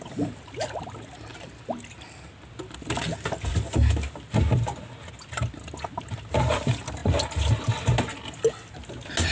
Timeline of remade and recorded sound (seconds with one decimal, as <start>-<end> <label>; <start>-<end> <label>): 0.0-9.3 recorded